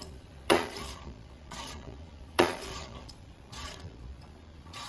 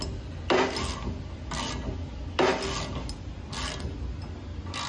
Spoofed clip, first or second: first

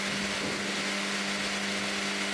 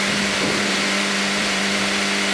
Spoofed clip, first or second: second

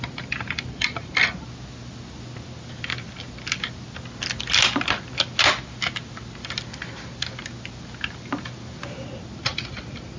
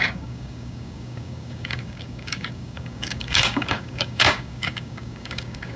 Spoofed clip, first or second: second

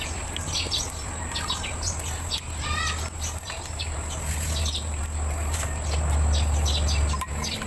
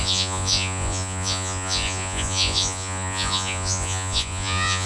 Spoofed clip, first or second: second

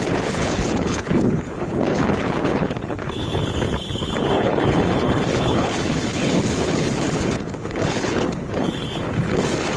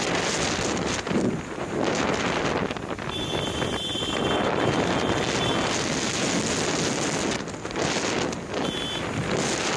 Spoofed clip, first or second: first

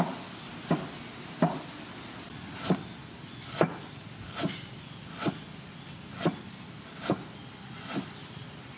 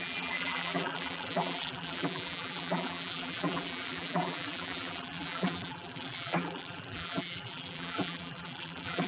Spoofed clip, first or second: second